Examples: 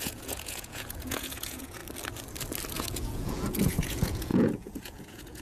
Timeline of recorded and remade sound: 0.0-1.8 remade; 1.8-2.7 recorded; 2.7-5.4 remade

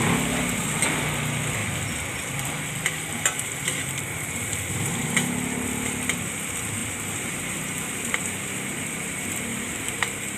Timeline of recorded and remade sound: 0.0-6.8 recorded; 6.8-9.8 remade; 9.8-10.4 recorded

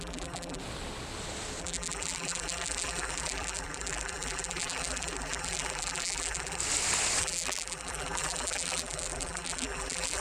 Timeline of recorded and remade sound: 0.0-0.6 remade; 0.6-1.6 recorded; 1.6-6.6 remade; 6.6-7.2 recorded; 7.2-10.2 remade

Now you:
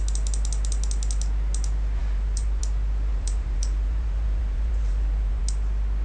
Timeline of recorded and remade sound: 0.0-2.0 recorded; 2.0-2.6 remade; 2.6-3.1 recorded; 3.1-5.4 remade; 5.4-6.0 recorded

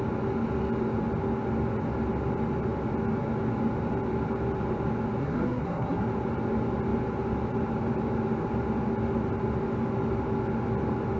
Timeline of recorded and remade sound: 0.0-5.2 recorded; 5.2-6.1 remade; 6.1-11.2 recorded